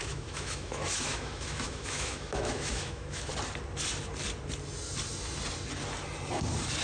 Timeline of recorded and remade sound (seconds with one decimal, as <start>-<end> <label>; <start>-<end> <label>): 0.0-3.3 remade; 3.3-6.8 recorded